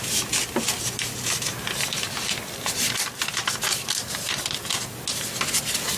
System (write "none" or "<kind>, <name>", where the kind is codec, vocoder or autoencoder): none